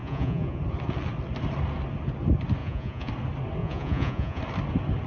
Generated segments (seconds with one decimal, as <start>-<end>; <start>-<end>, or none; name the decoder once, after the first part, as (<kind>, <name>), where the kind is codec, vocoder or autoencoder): 0.0-0.6 (vocoder, Vocos); 2.6-3.1; 3.6-4.4